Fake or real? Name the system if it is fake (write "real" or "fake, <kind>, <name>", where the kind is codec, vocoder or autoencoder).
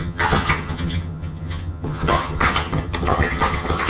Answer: fake, vocoder, HiFi-GAN